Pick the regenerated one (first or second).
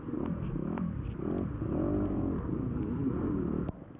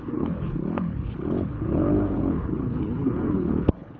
second